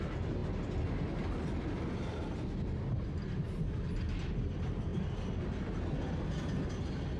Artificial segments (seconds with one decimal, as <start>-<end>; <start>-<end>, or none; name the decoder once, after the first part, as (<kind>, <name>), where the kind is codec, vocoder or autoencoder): none